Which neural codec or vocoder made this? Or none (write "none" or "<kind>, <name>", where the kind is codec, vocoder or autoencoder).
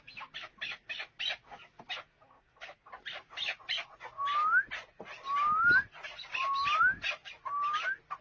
none